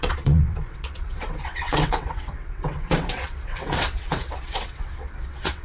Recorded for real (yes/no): no